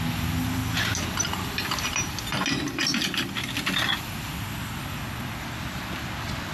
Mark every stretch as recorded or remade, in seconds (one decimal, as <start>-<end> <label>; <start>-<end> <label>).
0.0-6.5 recorded